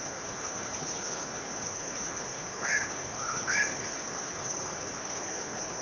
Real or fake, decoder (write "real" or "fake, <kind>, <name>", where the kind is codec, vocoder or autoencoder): fake, codec, HILCodec